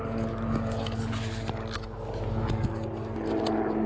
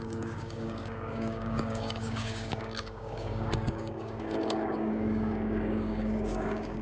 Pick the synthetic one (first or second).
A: second